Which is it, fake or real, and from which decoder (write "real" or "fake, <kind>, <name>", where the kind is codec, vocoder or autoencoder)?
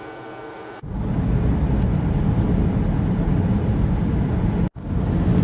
real